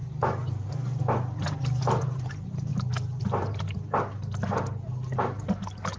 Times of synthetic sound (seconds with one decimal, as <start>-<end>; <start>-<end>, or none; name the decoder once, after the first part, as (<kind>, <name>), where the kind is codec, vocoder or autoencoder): none